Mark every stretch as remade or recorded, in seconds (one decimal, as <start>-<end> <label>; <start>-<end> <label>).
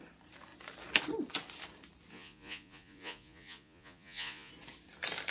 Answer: 0.0-2.1 recorded; 2.1-4.5 remade; 4.5-5.3 recorded